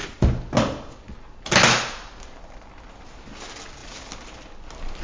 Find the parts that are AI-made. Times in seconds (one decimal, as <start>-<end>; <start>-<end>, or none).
none